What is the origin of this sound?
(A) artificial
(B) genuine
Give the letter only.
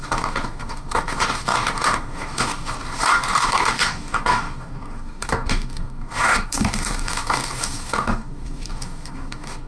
A